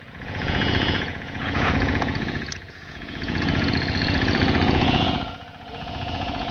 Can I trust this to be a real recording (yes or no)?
no